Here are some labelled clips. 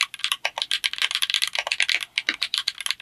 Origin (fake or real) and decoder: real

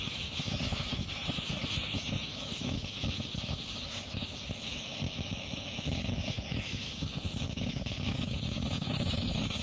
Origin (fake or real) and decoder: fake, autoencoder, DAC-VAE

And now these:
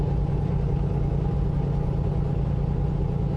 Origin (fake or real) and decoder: real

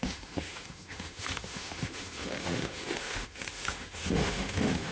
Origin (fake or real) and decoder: fake, autoencoder, DAC-VAE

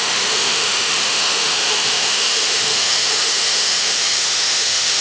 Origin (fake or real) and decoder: fake, autoencoder, DAC-VAE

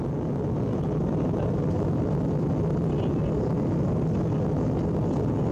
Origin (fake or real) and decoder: real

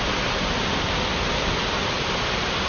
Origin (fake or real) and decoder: real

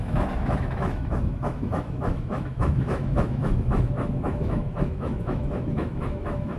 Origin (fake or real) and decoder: fake, autoencoder, DAC-VAE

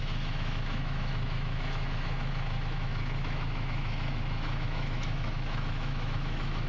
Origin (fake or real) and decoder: fake, autoencoder, DAC-VAE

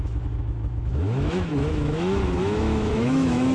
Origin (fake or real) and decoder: fake, autoencoder, DAC-VAE